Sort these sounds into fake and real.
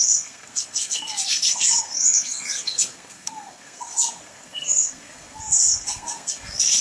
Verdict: fake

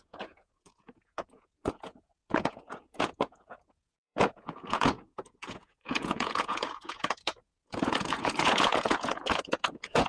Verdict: fake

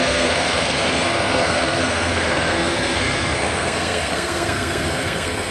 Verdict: fake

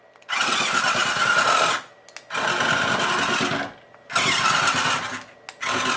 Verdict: real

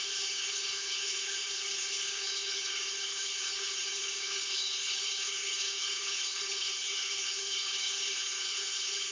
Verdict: fake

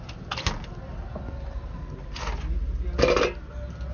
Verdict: real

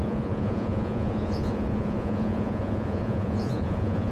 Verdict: fake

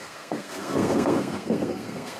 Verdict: fake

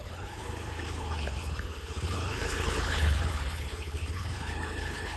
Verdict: fake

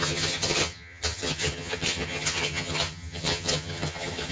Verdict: fake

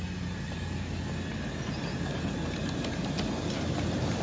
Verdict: real